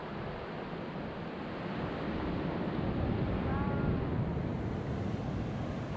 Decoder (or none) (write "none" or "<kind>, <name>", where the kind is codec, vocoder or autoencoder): none